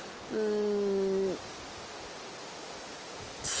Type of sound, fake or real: real